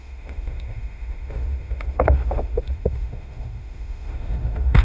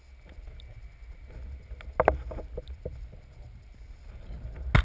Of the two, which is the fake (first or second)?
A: first